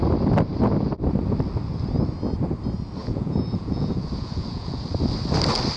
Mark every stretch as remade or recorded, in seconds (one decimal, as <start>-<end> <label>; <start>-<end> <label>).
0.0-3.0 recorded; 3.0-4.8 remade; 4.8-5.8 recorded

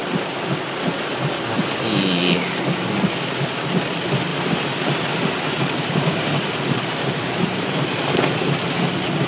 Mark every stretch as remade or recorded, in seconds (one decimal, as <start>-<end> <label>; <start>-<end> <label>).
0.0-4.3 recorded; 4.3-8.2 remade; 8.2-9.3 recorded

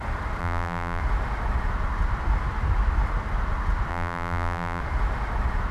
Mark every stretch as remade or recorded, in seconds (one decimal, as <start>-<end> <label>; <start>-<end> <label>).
0.0-0.4 recorded; 0.4-1.0 remade; 1.0-3.9 recorded; 3.9-4.8 remade; 4.8-5.7 recorded

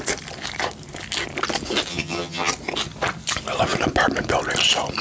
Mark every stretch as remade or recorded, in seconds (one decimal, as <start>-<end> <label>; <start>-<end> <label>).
0.0-1.9 recorded; 1.9-2.5 remade; 2.5-5.0 recorded

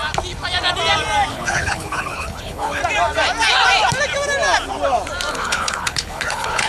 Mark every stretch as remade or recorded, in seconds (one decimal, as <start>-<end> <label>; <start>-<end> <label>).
0.0-1.3 recorded; 1.3-2.8 remade; 2.8-5.3 recorded; 5.3-6.7 remade